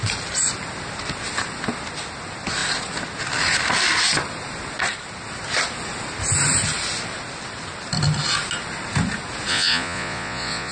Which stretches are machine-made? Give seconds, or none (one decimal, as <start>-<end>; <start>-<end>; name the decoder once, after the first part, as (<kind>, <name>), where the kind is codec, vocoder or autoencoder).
9.5-10.7 (vocoder, Vocos)